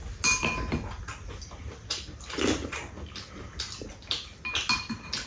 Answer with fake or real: real